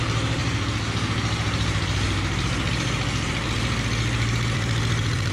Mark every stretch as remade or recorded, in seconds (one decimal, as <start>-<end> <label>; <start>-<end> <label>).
0.0-5.3 remade